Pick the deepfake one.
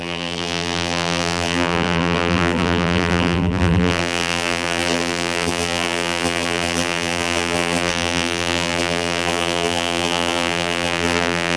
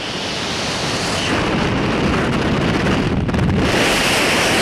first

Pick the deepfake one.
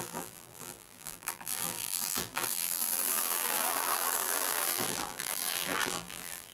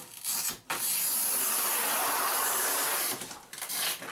first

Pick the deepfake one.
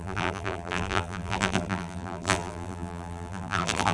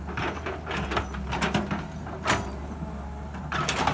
first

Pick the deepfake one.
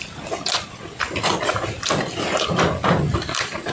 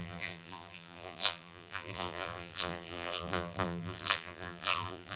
second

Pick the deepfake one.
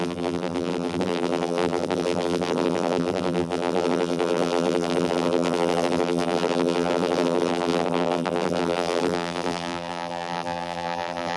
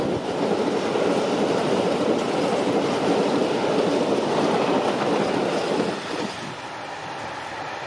first